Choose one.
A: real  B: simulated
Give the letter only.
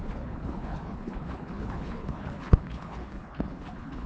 B